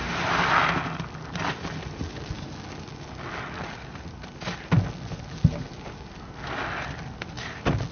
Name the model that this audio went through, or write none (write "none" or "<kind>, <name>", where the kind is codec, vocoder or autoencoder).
none